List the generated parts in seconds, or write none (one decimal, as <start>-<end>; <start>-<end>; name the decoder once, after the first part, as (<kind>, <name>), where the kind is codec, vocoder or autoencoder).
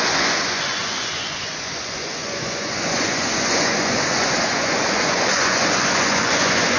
0.0-6.8 (vocoder, Vocos)